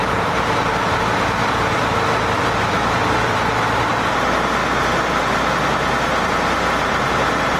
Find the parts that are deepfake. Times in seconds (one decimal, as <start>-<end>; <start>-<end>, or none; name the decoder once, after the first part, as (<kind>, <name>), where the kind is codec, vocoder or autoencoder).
0.0-1.8 (vocoder, BigVGAN v2)